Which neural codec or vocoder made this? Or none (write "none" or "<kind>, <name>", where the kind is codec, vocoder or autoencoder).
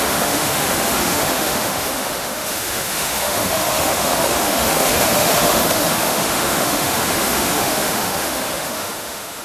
autoencoder, DAC-VAE